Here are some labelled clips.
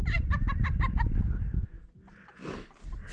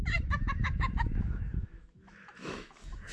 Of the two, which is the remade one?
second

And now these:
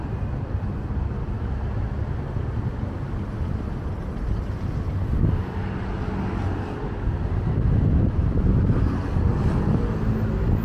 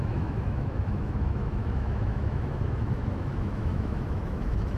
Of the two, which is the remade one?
second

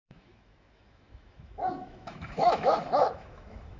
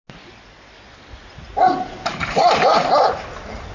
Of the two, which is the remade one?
first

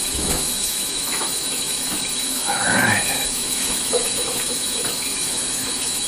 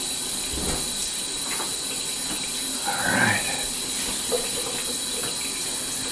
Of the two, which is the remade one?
first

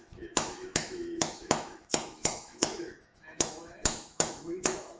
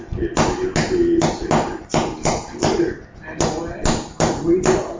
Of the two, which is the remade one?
first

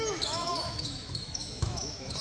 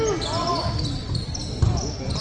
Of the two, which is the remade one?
first